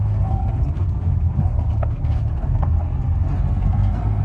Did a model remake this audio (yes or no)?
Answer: yes